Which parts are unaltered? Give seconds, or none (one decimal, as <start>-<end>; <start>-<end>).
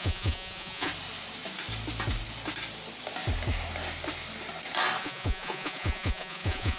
0.9-5.0